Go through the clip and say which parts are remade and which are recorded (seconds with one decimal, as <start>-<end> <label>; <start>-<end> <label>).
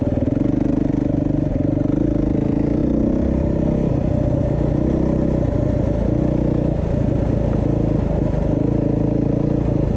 0.0-10.0 recorded